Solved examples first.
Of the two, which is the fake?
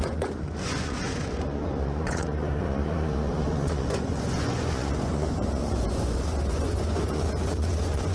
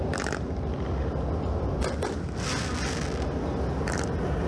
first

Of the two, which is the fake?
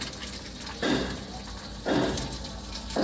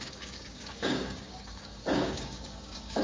second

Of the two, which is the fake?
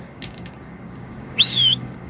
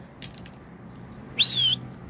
first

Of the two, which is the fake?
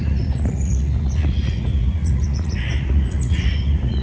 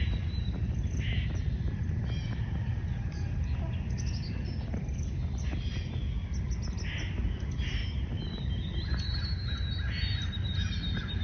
first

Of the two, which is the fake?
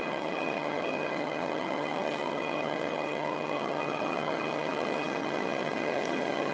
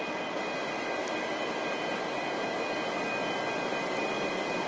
first